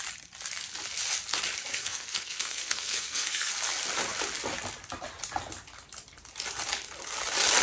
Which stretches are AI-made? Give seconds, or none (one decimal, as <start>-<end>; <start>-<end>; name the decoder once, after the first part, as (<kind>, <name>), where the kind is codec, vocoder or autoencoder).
1.7-3.5 (codec, SNAC)